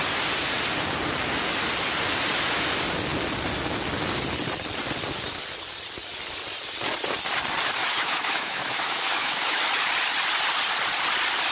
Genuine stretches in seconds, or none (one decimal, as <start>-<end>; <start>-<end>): 0.0-7.8; 9.6-11.5